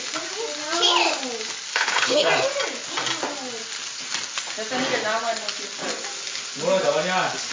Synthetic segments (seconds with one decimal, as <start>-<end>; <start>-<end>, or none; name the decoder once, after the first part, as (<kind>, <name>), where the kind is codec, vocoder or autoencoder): 1.7-2.3 (codec, HILCodec)